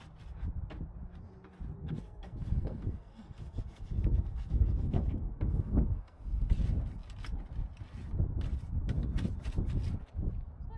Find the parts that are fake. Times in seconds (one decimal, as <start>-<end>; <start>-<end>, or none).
1.8-6.4

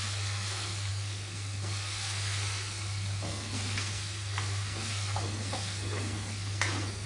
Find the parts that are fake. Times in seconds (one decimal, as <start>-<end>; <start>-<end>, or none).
0.0-7.1

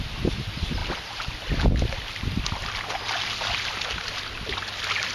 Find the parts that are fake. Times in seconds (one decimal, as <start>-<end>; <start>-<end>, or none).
none

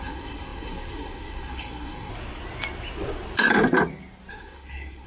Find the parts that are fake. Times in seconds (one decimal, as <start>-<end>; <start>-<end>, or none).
0.0-2.1; 4.3-5.1

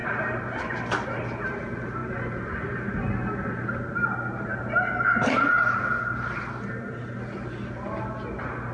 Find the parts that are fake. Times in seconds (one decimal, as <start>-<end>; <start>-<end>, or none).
none

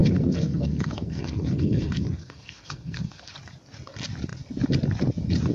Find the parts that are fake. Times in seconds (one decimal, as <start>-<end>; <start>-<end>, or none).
0.0-3.3

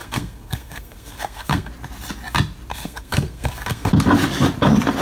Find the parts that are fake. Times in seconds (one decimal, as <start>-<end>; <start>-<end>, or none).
0.0-1.7; 2.7-3.9